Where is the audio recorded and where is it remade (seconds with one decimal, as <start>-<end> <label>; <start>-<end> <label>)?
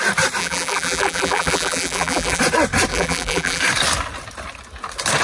0.0-0.4 recorded; 0.4-2.4 remade; 2.4-2.9 recorded; 2.9-3.6 remade; 3.6-5.2 recorded